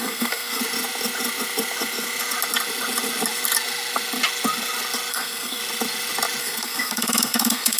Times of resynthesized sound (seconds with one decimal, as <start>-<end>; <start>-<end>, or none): 0.0-0.6; 5.1-5.6; 6.4-7.8